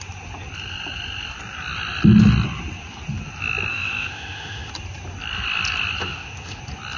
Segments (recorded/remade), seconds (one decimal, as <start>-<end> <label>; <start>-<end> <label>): 0.0-3.7 recorded; 3.7-4.7 remade; 4.7-6.0 recorded; 6.0-6.6 remade; 6.6-7.0 recorded